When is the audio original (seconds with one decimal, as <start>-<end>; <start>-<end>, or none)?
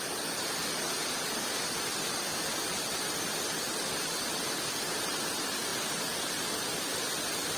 0.0-7.6